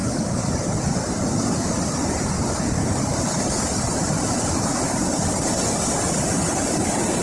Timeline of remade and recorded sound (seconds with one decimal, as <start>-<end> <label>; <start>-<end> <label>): 0.0-7.2 recorded